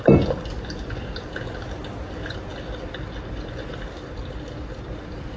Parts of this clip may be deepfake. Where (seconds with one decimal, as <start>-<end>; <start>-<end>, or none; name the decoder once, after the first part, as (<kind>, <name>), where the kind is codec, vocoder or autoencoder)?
none